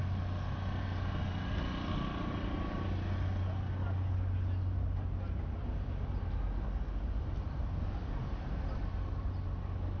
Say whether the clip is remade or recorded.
recorded